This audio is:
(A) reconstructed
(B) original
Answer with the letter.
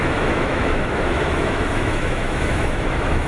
A